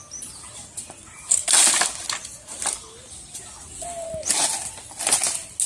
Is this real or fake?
real